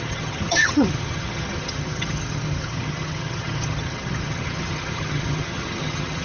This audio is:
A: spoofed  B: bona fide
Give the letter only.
A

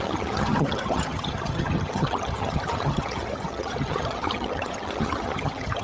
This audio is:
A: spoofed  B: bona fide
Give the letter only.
A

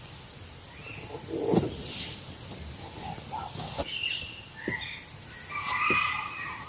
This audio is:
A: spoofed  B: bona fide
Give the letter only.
B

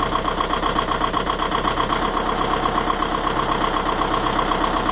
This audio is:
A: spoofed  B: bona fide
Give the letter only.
B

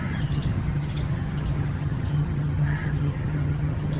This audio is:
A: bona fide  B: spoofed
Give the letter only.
B